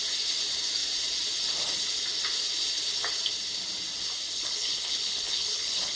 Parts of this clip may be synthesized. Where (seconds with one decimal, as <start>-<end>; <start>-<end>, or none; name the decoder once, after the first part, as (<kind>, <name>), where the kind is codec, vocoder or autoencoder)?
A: 4.3-6.0 (codec, HILCodec)